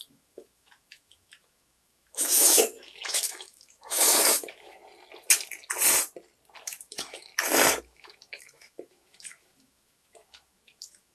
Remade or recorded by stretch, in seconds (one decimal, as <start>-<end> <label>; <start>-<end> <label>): 0.0-4.8 remade; 4.8-6.6 recorded; 6.6-7.3 remade; 7.3-7.8 recorded; 7.8-11.1 remade